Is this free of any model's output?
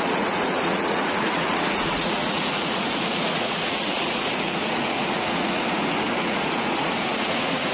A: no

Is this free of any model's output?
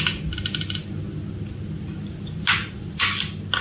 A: yes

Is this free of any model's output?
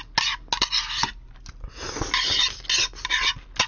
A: yes